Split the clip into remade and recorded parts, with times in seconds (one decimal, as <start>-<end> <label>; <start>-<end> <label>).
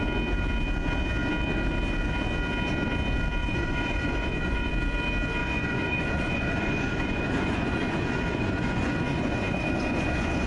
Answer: 0.0-3.4 recorded; 3.4-4.7 remade; 4.7-5.4 recorded; 5.4-10.5 remade